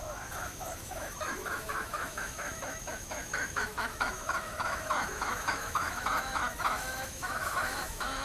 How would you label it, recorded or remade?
remade